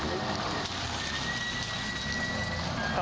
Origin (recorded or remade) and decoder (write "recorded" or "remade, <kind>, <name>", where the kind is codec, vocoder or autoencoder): recorded